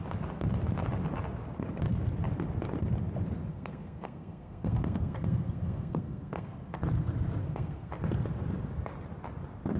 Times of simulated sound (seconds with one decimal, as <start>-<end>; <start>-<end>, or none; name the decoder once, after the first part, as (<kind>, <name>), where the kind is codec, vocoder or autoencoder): 3.5-6.8 (codec, SNAC); 7.4-7.9